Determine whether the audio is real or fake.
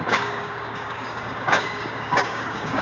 fake